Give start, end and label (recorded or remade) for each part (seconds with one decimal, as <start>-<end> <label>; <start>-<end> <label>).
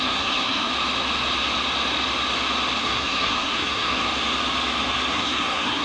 0.0-0.7 remade; 0.7-2.8 recorded; 2.8-4.1 remade; 4.1-5.1 recorded; 5.1-5.8 remade